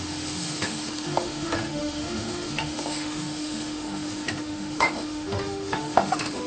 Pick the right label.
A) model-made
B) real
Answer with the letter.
A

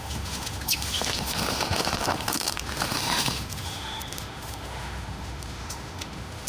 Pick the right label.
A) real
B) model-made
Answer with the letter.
B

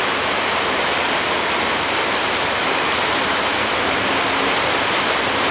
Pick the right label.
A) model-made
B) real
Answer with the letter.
B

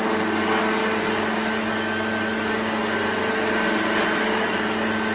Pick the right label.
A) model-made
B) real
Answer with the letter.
B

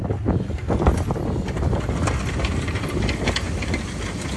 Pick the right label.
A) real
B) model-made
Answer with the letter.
A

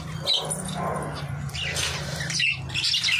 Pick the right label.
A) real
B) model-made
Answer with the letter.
A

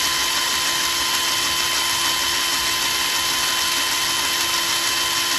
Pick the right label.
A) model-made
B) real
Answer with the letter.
B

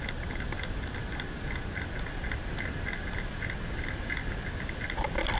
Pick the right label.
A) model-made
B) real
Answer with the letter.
B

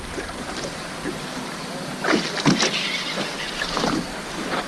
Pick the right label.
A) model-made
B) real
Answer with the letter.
B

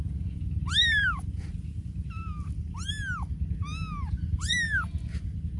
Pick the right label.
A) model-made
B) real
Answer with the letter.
B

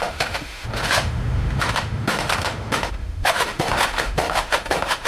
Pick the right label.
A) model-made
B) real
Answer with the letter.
A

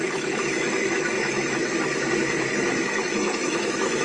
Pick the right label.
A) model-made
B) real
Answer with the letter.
A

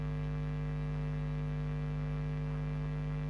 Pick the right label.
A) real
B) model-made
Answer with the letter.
A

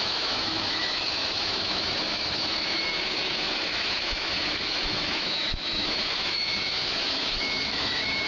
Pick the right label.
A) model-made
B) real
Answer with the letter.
A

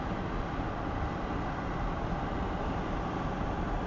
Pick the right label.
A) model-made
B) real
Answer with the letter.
B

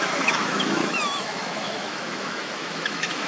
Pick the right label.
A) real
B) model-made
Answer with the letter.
B